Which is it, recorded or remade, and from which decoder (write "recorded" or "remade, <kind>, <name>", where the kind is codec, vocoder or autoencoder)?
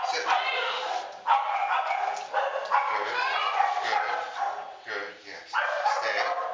recorded